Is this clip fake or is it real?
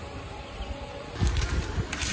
real